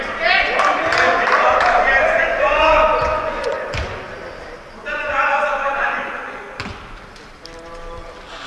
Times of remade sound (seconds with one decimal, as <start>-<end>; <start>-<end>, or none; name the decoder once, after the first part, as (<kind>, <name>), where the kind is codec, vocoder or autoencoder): 2.0-4.0 (vocoder, Vocos); 4.8-6.4